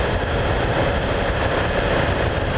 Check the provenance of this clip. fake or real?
fake